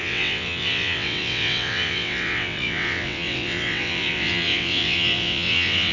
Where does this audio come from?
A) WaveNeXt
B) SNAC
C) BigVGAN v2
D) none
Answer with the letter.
A